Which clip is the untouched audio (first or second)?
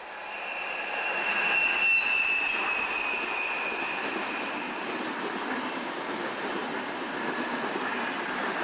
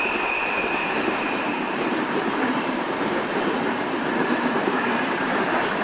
first